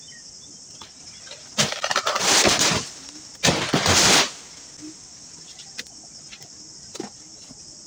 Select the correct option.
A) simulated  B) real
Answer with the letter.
B